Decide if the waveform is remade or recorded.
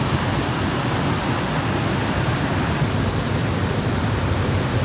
recorded